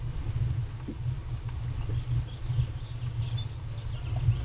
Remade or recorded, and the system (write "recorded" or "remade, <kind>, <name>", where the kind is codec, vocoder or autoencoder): recorded